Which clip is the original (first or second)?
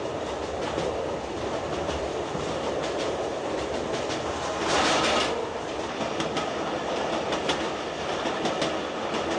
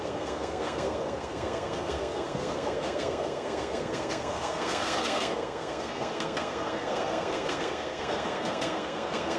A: first